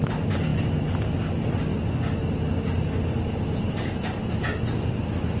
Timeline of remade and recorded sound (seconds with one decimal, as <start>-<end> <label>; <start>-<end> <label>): 0.0-5.4 recorded